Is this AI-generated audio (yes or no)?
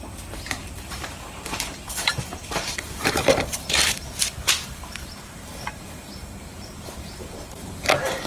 yes